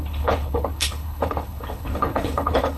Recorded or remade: remade